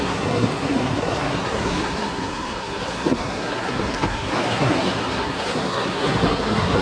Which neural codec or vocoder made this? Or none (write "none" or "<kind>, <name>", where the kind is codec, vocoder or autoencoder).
codec, SNAC